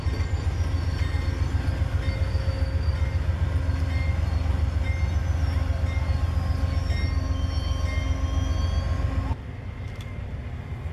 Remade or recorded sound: recorded